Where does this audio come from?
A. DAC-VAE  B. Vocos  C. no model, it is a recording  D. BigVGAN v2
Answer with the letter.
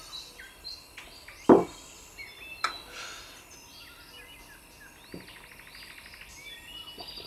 C